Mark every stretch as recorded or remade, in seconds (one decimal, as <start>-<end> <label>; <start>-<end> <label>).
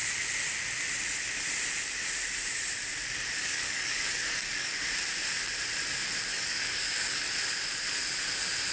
0.0-3.4 recorded; 3.4-4.9 remade; 4.9-6.3 recorded; 6.3-7.3 remade; 7.3-8.7 recorded